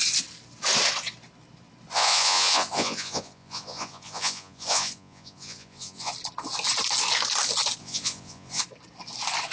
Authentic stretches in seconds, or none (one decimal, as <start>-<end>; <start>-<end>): 0.0-1.9; 6.1-7.8; 8.6-9.5

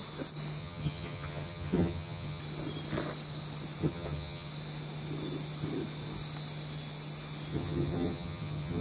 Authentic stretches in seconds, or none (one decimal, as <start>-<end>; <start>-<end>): 0.0-0.6; 2.4-3.8; 4.5-7.5

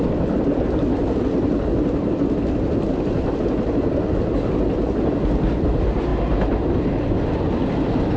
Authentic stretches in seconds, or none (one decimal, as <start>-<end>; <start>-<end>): 0.0-8.2

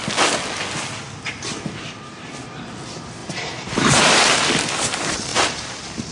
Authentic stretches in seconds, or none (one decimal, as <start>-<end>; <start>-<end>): 0.0-3.2; 4.5-5.3

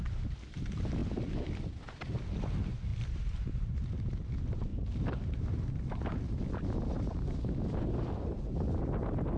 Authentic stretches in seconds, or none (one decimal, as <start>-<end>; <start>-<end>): 0.0-1.0; 2.2-2.9; 4.0-4.7; 6.0-9.4